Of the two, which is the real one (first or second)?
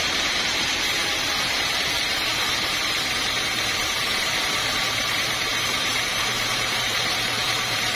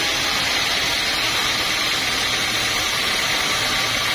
second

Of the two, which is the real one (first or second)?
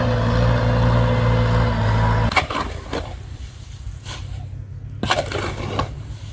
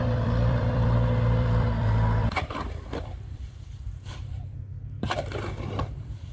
first